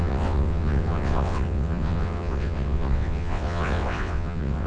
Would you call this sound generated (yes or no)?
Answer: yes